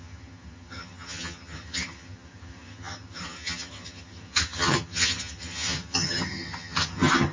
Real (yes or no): no